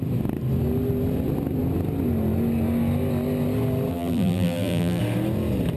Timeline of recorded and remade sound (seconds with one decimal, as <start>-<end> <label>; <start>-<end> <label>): 0.0-3.9 recorded; 3.9-5.0 remade; 5.0-5.8 recorded